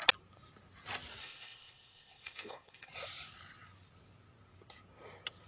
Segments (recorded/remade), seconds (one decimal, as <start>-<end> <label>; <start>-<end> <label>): 0.0-1.2 recorded; 1.2-2.9 remade; 2.9-5.5 recorded